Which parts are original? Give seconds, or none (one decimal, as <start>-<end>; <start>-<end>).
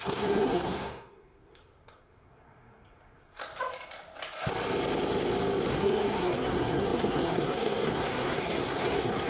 3.4-5.7